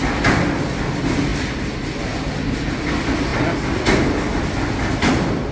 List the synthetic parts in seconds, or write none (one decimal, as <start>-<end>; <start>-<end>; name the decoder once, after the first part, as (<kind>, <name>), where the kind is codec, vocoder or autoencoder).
none